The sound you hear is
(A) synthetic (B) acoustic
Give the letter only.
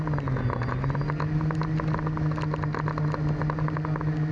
B